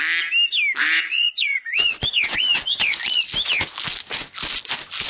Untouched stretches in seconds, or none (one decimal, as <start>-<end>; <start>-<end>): 0.0-0.8; 3.2-5.1